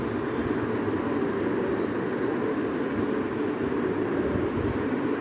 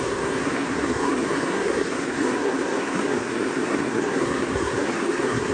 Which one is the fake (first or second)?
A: second